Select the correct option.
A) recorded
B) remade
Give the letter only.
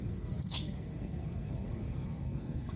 B